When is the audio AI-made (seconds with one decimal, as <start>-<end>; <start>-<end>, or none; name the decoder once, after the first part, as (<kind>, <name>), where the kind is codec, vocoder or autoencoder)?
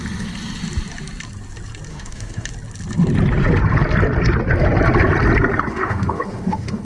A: 1.9-2.5 (autoencoder, DAC-VAE); 5.7-6.8